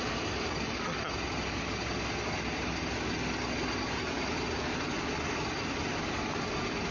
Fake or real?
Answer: real